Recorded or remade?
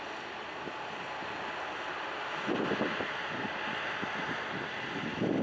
recorded